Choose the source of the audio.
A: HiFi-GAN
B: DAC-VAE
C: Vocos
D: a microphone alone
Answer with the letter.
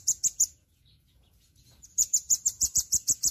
C